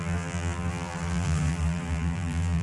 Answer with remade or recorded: remade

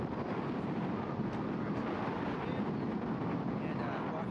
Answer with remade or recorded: recorded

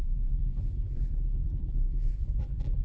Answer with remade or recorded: remade